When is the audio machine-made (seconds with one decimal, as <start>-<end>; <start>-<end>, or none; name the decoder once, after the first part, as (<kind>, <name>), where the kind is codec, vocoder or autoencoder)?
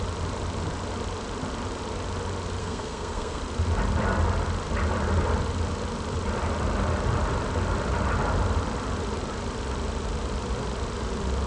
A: 2.6-3.4 (codec, SNAC)